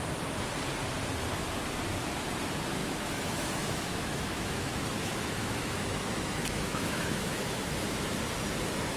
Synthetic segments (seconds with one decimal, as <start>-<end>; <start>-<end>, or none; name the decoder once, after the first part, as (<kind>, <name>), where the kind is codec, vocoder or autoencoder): 2.8-7.8 (autoencoder, DAC-VAE)